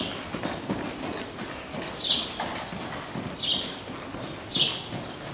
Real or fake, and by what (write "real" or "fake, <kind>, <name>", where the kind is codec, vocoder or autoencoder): real